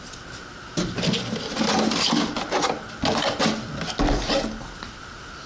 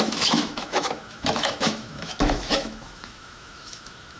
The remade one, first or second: second